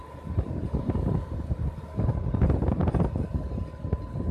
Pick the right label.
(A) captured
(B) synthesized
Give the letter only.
A